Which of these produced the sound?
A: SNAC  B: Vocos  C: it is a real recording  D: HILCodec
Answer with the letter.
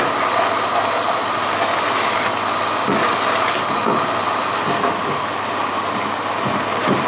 C